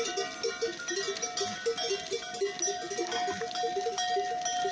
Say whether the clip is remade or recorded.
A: recorded